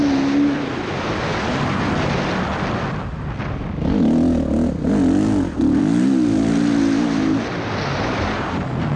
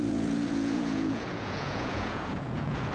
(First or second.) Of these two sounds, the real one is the first